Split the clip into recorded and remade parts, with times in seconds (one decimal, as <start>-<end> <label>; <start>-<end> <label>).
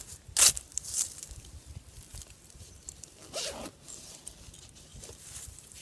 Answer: 0.0-2.1 recorded; 2.1-3.8 remade; 3.8-4.9 recorded; 4.9-5.8 remade